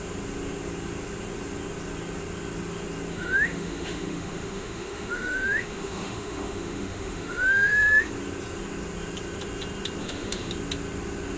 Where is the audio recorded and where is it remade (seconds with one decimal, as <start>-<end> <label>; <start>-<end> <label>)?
0.0-3.1 recorded; 3.1-8.1 remade; 8.1-10.0 recorded; 10.0-10.5 remade; 10.5-11.4 recorded